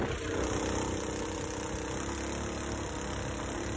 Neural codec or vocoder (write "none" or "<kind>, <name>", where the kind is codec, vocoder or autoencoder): none